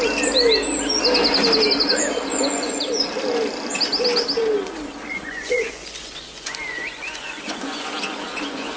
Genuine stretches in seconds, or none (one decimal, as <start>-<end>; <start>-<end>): 0.0-2.3; 2.8-5.1